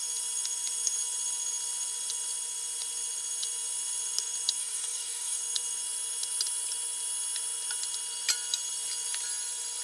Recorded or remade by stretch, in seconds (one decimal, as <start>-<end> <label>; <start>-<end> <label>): 0.0-4.6 recorded; 4.6-5.4 remade; 5.4-9.8 recorded